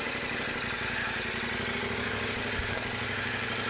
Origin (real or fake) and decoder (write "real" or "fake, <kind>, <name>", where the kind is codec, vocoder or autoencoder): real